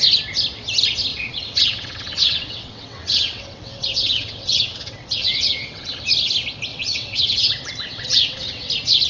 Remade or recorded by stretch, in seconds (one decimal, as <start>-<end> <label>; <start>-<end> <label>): 0.0-1.1 recorded; 1.1-6.0 remade; 6.0-6.7 recorded; 6.7-8.7 remade; 8.7-9.1 recorded